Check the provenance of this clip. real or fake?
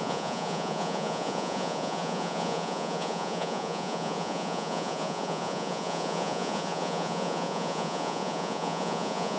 fake